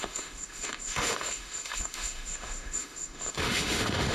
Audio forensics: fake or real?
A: fake